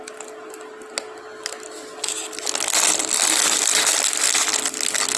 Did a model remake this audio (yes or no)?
no